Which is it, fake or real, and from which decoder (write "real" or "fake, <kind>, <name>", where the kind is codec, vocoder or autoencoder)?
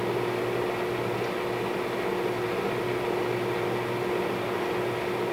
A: real